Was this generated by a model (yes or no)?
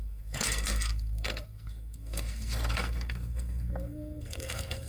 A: yes